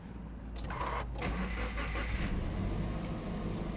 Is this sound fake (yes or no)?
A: no